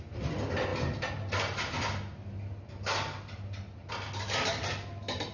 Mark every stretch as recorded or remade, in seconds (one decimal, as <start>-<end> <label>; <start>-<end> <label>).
0.0-5.3 recorded